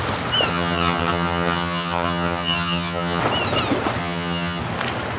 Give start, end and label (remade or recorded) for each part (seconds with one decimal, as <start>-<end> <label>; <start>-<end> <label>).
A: 0.0-0.5 recorded; 0.5-3.2 remade; 3.2-4.0 recorded; 4.0-4.6 remade; 4.6-5.2 recorded